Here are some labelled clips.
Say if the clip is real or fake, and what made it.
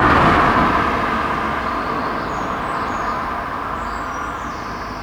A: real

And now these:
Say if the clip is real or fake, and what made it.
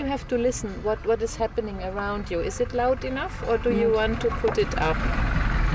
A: real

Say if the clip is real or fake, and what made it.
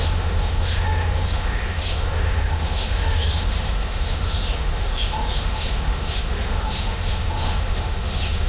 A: fake, autoencoder, DAC-VAE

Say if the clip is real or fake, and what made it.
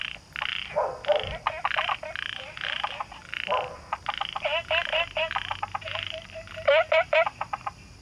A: real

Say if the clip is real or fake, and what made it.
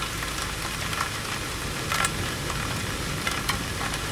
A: real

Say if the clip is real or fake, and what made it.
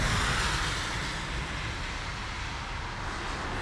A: real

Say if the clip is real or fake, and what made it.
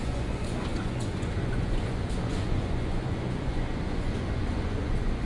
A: fake, vocoder, Vocos